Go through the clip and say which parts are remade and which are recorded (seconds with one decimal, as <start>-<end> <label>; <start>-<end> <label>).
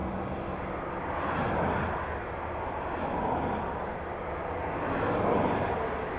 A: 0.0-6.2 recorded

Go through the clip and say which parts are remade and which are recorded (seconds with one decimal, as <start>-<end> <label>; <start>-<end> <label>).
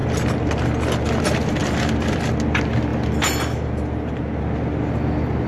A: 0.0-1.6 recorded; 1.6-2.3 remade; 2.3-5.5 recorded